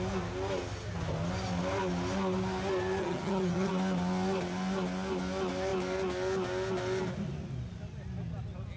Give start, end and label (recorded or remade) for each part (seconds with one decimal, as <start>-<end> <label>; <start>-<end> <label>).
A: 0.0-3.0 recorded; 3.0-3.7 remade; 3.7-8.8 recorded